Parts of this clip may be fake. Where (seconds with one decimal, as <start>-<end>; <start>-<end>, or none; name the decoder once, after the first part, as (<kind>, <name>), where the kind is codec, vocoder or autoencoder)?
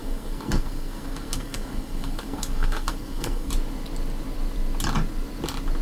0.0-3.5 (codec, SNAC)